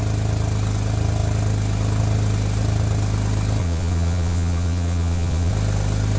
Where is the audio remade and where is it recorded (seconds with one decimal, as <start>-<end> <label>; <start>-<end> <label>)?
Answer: 0.0-3.6 recorded; 3.6-5.5 remade; 5.5-6.2 recorded